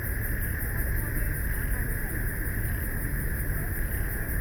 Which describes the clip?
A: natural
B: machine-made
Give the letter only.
A